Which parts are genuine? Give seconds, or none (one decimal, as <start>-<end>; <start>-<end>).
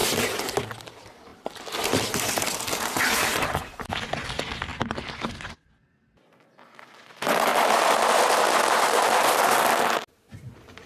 0.9-10.9